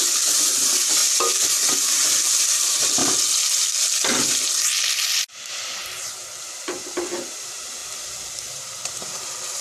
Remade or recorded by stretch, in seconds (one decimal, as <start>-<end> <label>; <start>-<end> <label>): 0.0-1.0 remade; 1.0-1.7 recorded; 1.7-3.0 remade; 3.0-6.4 recorded; 6.4-7.8 remade; 7.8-8.3 recorded; 8.3-9.6 remade